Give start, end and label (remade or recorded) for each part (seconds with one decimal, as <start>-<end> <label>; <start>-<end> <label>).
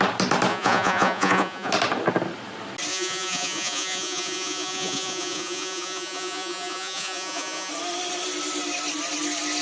0.0-0.5 recorded; 0.5-1.7 remade; 1.7-2.9 recorded; 2.9-7.7 remade; 7.7-9.6 recorded